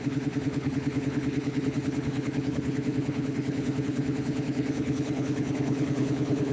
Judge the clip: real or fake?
fake